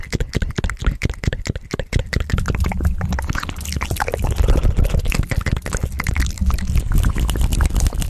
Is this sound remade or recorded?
recorded